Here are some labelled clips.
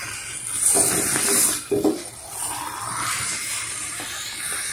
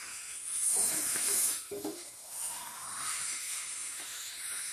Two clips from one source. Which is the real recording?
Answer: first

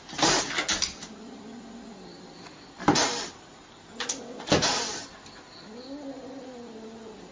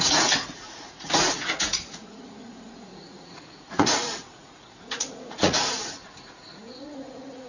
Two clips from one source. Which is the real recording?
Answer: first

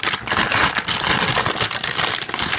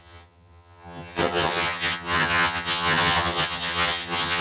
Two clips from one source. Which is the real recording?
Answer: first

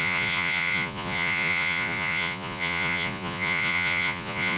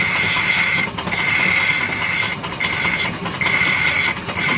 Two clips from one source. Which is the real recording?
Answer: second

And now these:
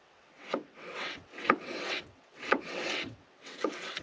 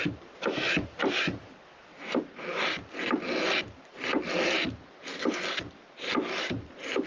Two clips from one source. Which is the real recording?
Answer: second